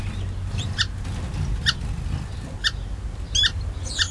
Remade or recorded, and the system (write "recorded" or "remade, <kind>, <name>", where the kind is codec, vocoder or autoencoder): recorded